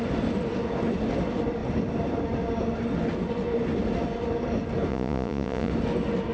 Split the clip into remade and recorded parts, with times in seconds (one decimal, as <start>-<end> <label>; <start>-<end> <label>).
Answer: 0.0-4.9 recorded; 4.9-5.7 remade; 5.7-6.3 recorded